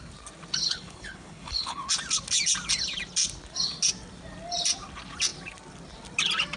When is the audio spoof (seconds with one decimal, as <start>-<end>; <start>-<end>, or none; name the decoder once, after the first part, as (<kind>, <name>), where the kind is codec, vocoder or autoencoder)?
0.6-1.8 (codec, HILCodec)